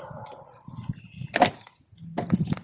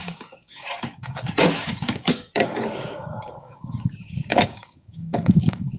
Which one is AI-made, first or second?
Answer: second